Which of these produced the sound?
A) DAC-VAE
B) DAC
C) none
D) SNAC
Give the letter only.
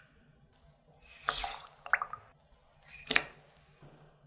C